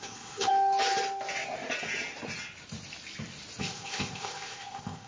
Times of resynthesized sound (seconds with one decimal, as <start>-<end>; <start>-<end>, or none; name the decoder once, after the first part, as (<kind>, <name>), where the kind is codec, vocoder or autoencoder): 0.0-0.5 (codec, ZipCodec); 3.6-5.1